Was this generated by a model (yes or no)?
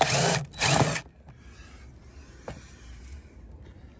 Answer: no